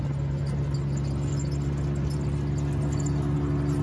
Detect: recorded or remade recorded